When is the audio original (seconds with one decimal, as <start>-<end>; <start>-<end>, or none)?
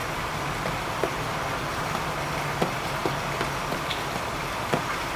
0.0-5.2